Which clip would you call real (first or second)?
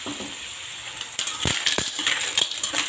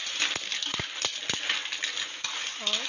second